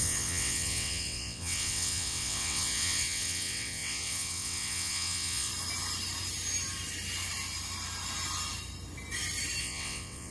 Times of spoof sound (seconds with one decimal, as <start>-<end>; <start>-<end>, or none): 0.0-5.5; 9.6-10.3